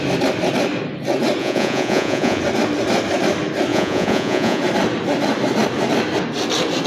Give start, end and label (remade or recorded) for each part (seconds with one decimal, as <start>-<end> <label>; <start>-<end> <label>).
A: 0.0-1.4 recorded; 1.4-2.4 remade; 2.4-3.7 recorded; 3.7-4.6 remade; 4.6-6.9 recorded